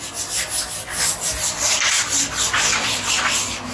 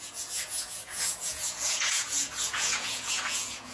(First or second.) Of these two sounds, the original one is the first